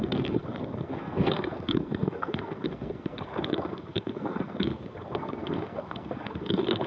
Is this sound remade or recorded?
remade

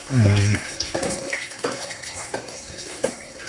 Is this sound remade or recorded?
remade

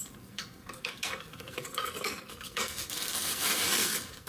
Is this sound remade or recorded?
remade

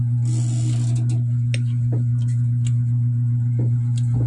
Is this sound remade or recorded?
recorded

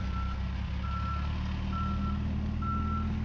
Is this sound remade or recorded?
recorded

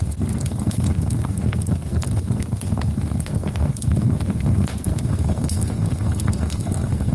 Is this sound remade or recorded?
remade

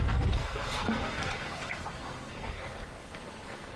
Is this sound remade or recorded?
remade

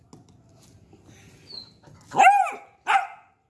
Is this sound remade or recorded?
recorded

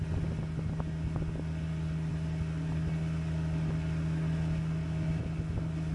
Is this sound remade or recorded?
recorded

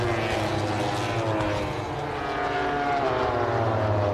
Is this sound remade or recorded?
recorded